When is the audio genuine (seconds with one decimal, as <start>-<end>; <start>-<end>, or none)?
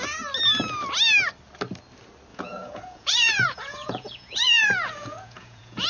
0.0-2.3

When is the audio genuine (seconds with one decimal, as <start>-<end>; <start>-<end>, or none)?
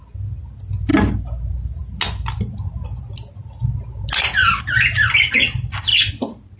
0.0-6.6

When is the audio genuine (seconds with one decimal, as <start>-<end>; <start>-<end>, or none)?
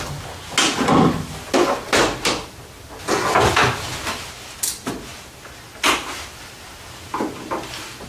0.0-8.1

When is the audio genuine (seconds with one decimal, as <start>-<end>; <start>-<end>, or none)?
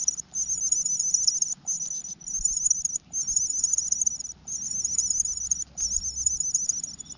0.0-7.2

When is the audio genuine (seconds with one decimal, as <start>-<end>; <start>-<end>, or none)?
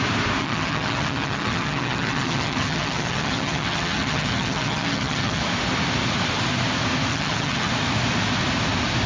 0.0-0.4; 5.4-7.1; 7.7-9.1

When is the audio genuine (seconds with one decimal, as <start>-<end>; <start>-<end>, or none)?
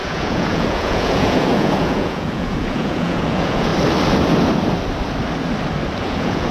3.7-6.0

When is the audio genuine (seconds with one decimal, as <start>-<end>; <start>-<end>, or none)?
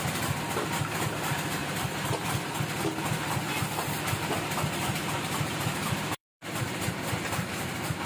0.0-1.6; 2.2-4.8; 7.1-8.1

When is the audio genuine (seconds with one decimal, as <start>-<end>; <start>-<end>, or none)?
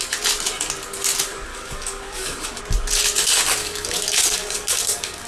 0.0-1.5; 2.6-3.6